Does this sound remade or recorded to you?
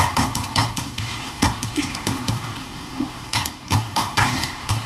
remade